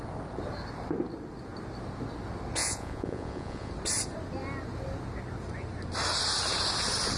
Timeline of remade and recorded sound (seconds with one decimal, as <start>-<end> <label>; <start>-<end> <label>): 0.0-2.6 recorded; 2.6-3.7 remade; 3.7-7.2 recorded